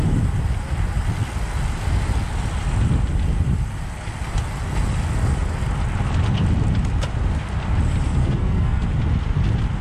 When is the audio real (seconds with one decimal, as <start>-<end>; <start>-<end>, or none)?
0.0-8.2; 8.9-9.8